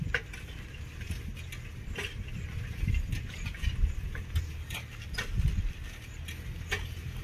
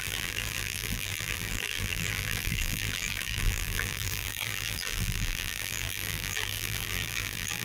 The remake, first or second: second